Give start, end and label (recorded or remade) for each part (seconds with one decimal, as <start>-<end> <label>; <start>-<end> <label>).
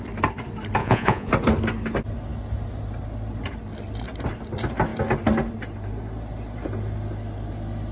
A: 0.0-0.8 recorded; 0.8-1.3 remade; 1.3-7.9 recorded